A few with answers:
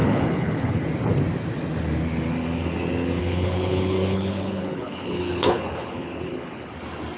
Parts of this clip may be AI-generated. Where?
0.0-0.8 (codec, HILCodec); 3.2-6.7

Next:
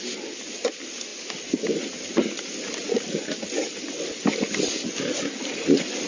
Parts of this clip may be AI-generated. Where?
none

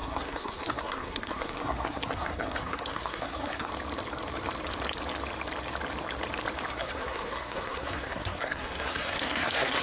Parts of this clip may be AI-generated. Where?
0.0-3.7 (codec, SNAC); 6.7-9.8

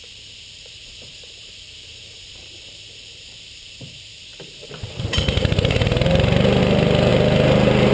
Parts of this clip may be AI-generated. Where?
0.0-7.9 (vocoder, BigVGAN v2)

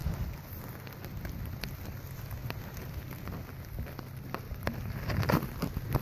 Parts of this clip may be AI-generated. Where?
none

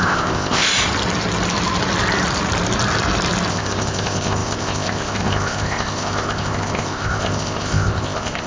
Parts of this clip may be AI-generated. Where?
0.0-0.7 (codec, ZipCodec); 3.5-8.5

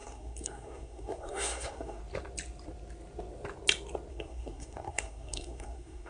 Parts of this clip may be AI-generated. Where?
0.0-2.0 (codec, SNAC); 4.1-6.1

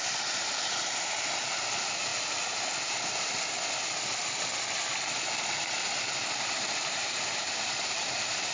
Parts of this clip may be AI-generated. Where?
0.0-2.1 (vocoder, BigVGAN v2); 6.4-8.5